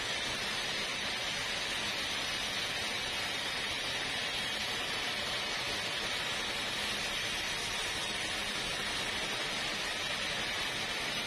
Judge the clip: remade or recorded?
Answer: recorded